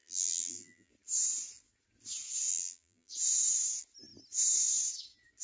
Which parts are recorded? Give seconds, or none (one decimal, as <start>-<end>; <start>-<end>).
0.9-2.5; 3.1-5.4